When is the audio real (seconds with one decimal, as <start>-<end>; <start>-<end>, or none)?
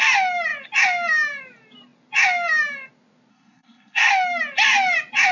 0.0-3.3; 4.1-5.3